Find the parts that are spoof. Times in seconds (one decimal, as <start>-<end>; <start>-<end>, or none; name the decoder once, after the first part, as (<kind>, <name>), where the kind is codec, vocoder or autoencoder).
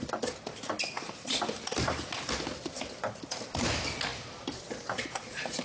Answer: none